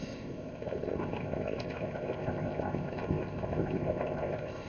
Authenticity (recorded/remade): remade